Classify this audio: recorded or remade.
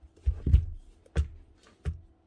recorded